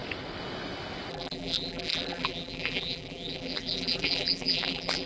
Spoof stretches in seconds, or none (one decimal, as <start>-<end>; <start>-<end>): 1.1-5.1